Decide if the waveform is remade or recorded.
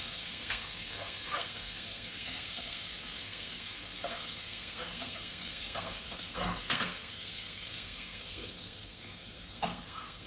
remade